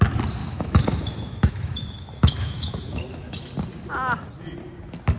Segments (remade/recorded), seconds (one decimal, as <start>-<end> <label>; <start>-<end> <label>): 0.0-0.4 recorded; 0.4-3.5 remade; 3.5-5.2 recorded